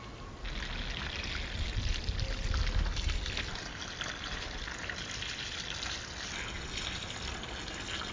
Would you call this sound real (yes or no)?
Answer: yes